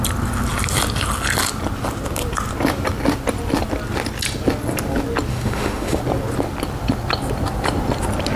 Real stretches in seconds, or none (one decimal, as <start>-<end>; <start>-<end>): 0.0-5.3; 6.0-8.4